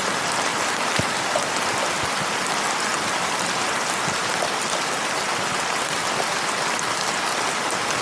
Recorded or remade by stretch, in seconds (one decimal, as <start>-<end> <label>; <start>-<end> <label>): 0.0-0.5 remade; 0.5-2.2 recorded; 2.2-2.9 remade; 2.9-8.0 recorded